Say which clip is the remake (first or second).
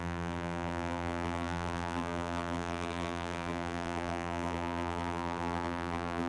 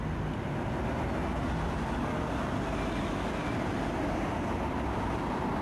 first